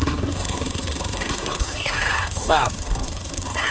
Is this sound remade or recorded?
remade